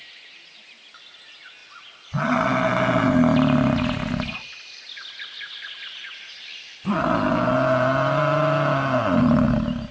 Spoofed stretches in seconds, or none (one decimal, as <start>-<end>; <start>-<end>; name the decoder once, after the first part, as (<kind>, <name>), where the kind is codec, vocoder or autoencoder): none